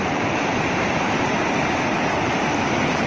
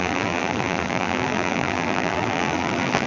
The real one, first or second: first